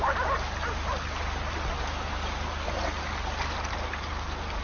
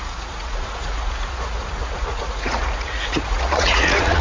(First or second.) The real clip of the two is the first